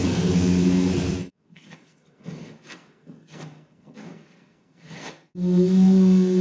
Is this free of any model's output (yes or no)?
no